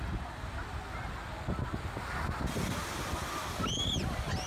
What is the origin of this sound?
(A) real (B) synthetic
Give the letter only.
A